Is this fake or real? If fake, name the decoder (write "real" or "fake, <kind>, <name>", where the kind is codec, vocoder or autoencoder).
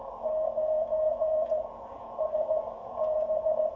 fake, vocoder, Vocos